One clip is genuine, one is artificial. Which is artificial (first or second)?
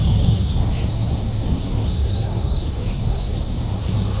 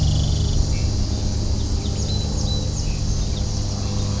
first